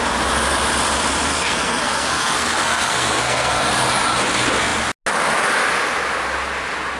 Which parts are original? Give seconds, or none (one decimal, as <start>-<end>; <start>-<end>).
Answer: 0.0-1.3; 3.7-7.0

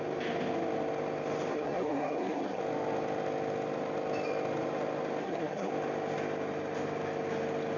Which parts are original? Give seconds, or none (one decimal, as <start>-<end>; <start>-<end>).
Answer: 0.0-1.5; 2.6-5.2; 5.7-7.8

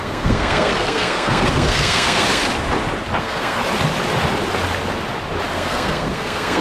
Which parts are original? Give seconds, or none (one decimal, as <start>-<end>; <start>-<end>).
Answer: 2.4-3.2; 3.6-5.5